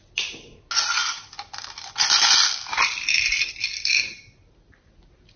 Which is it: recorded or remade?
recorded